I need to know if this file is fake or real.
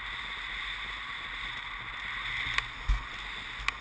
real